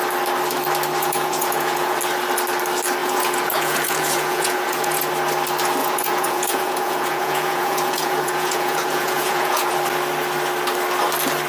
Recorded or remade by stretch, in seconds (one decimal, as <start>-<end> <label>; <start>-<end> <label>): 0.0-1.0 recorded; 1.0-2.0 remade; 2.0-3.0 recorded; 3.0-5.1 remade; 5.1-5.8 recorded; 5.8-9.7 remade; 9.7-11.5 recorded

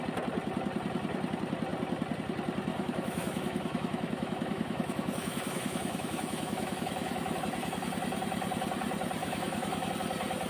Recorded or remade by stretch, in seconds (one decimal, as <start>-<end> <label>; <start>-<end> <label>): 0.0-2.7 recorded; 2.7-7.4 remade; 7.4-9.2 recorded; 9.2-9.9 remade; 9.9-10.5 recorded

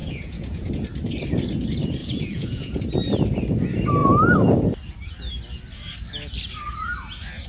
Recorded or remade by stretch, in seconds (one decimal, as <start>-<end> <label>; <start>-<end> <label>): 0.0-0.7 remade; 0.7-2.0 recorded; 2.0-2.8 remade; 2.8-7.5 recorded

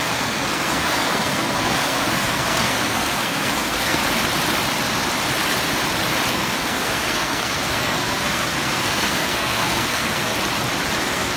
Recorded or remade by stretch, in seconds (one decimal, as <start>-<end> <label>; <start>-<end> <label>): 0.0-4.0 remade; 4.0-6.3 recorded; 6.3-10.3 remade; 10.3-11.0 recorded; 11.0-11.4 remade

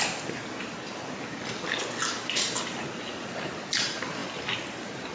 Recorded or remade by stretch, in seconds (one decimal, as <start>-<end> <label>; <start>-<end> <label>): 0.0-5.1 recorded

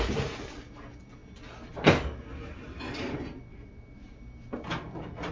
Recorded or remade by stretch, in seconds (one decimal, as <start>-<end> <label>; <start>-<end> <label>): 0.0-3.5 recorded; 3.5-4.2 remade; 4.2-5.3 recorded